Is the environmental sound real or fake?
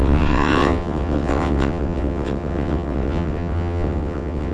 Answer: fake